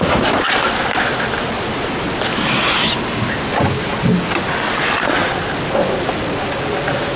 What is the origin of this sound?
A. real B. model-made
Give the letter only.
A